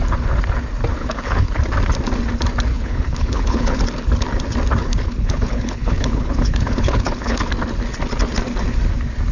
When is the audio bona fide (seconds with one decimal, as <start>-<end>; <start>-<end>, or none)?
0.0-1.0; 1.6-2.7; 3.8-4.8; 7.4-9.3